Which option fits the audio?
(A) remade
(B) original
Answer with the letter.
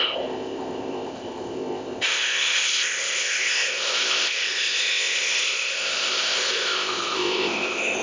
A